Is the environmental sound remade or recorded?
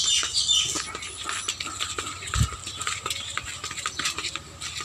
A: recorded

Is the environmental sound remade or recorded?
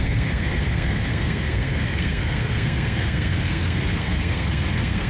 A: remade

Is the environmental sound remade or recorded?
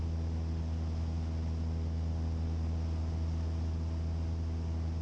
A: recorded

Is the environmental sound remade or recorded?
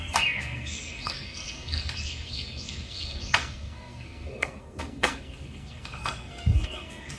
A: remade